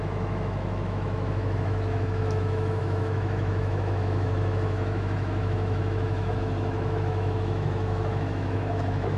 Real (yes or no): no